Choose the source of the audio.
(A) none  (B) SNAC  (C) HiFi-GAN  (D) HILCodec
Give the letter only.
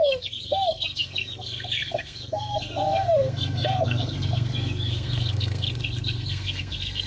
B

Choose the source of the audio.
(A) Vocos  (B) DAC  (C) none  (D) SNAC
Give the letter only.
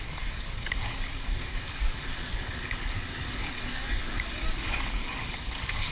B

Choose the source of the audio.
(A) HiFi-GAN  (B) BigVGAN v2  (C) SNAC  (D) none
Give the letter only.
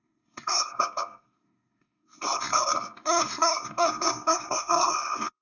C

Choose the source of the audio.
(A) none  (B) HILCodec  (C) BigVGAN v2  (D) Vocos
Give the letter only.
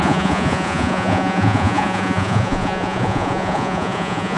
D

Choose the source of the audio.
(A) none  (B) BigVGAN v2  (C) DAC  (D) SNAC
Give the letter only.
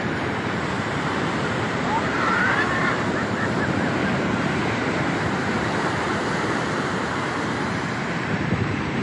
B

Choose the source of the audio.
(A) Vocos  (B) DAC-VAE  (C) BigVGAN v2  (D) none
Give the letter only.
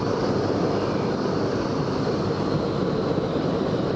D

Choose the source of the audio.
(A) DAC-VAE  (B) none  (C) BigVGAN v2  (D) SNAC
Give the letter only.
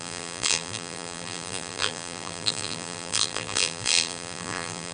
C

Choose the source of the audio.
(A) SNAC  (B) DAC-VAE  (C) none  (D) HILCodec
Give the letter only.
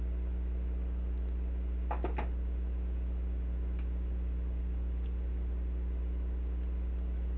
C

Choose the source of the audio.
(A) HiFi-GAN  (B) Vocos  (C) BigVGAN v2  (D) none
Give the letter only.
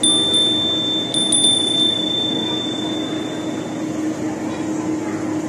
D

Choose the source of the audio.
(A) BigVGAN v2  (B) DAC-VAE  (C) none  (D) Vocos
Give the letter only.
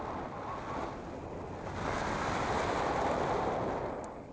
C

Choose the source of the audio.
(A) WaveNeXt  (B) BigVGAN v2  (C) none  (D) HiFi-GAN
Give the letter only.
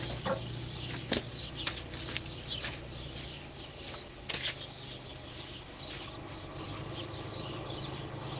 C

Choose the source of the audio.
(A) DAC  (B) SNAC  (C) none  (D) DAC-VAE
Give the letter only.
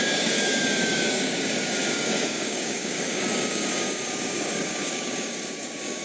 A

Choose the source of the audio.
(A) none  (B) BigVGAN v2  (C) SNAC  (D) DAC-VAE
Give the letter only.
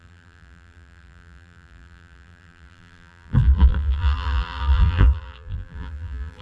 B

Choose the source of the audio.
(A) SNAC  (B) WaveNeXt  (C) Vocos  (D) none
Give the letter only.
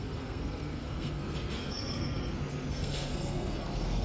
A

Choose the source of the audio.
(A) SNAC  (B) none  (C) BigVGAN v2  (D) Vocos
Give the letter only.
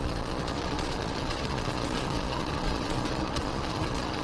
D